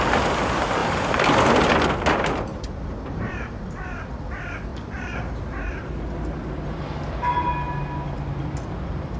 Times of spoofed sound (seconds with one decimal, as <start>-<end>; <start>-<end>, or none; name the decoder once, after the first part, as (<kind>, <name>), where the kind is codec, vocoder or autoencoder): 2.5-4.2 (vocoder, BigVGAN v2); 4.7-5.9